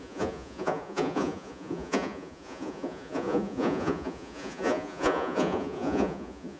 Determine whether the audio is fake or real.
fake